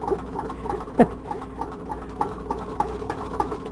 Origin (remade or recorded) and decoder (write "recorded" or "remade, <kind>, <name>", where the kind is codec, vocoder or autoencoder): remade, autoencoder, DAC-VAE